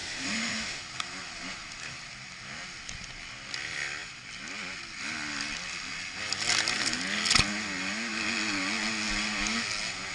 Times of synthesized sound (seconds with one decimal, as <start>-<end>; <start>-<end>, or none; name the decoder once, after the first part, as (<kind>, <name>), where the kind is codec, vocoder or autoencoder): 0.0-0.8 (autoencoder, DAC-VAE)